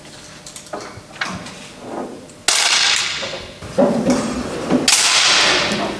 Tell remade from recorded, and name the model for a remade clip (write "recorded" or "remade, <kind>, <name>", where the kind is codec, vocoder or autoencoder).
recorded